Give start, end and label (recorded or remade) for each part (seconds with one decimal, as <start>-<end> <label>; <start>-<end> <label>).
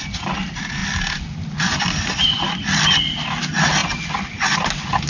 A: 0.0-5.1 recorded